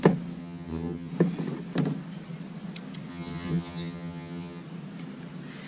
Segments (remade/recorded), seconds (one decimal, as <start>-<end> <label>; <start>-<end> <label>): 0.0-0.4 recorded; 0.4-1.1 remade; 1.1-3.1 recorded; 3.1-4.6 remade; 4.6-5.7 recorded